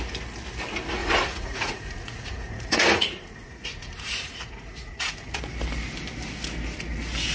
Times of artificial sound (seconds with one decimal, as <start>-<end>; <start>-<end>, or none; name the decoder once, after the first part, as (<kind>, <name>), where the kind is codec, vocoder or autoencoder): 1.0-5.4 (vocoder, Vocos)